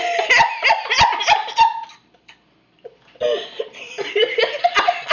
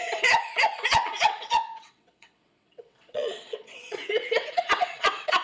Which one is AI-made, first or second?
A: second